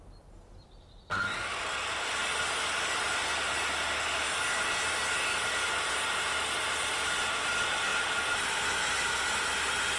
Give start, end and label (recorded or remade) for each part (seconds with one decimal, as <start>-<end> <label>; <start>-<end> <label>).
0.0-10.0 recorded